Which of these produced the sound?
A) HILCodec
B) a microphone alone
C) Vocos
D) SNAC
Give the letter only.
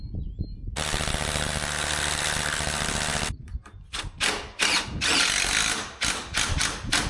B